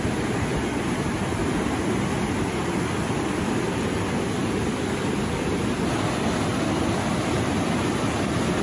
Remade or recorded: recorded